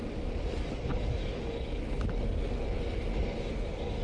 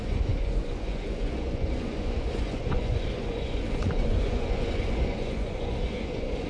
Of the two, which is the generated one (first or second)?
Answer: second